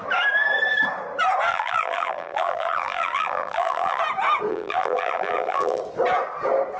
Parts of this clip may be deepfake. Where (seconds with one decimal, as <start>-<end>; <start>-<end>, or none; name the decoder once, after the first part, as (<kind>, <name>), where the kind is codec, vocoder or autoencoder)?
1.5-4.0 (vocoder, BigVGAN v2); 4.5-5.8